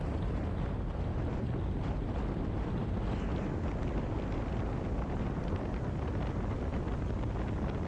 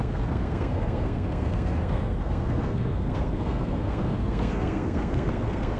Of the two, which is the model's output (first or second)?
second